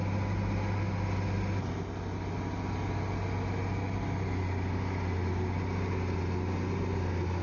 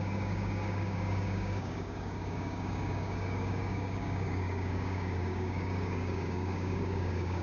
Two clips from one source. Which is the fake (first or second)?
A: second